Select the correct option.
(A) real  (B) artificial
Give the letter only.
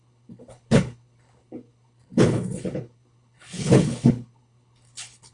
B